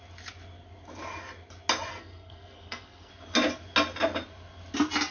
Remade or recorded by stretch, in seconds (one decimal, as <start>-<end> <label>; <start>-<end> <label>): 0.0-1.9 recorded; 1.9-3.1 remade; 3.1-5.1 recorded